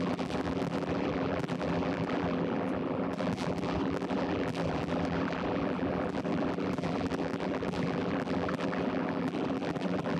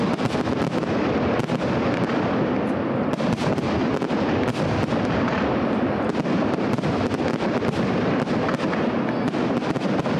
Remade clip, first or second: first